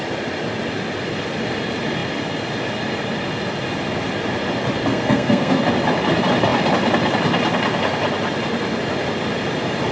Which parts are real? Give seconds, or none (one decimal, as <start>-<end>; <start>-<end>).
0.0-4.9; 5.6-9.9